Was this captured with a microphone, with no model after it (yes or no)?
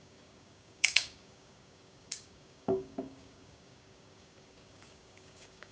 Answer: no